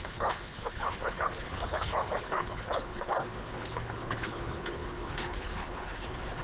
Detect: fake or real fake